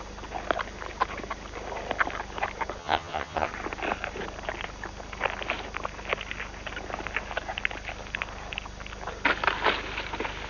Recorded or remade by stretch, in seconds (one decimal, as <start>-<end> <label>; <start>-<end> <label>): 0.0-2.8 recorded; 2.8-3.5 remade; 3.5-10.5 recorded

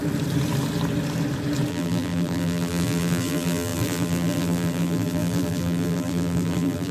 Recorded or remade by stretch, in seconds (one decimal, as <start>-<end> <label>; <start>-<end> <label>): 0.0-1.7 recorded; 1.7-6.9 remade

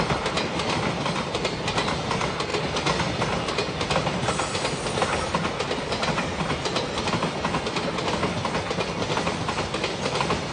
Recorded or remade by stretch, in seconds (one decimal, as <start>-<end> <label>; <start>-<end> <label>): 0.0-10.5 recorded

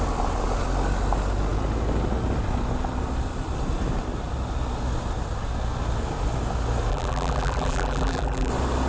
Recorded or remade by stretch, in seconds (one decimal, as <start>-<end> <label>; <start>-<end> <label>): 0.0-6.9 recorded; 6.9-8.5 remade; 8.5-8.9 recorded

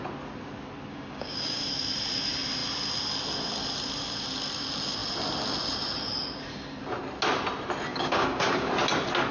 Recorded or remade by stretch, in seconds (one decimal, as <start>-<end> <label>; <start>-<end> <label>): 0.0-0.9 recorded; 0.9-1.7 remade; 1.7-7.9 recorded; 7.9-8.7 remade; 8.7-9.3 recorded

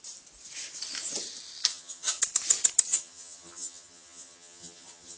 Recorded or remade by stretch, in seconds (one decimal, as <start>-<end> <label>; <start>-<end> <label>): 0.0-1.7 recorded; 1.7-2.2 remade; 2.2-2.9 recorded; 2.9-5.2 remade

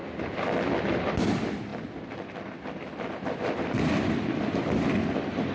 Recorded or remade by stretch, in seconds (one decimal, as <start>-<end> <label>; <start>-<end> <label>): 0.0-0.9 recorded; 0.9-5.5 remade